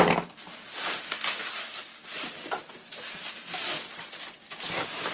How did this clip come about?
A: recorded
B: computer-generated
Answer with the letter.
A